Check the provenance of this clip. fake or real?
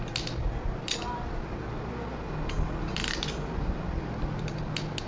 real